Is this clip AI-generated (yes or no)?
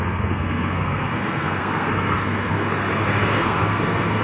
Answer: yes